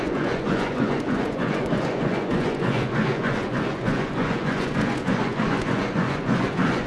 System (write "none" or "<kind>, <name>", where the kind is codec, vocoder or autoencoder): vocoder, Vocos